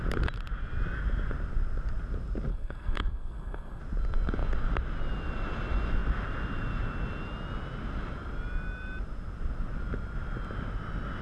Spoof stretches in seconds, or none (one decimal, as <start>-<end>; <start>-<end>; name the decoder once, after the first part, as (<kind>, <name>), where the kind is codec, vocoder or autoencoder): 2.5-3.8 (codec, SNAC)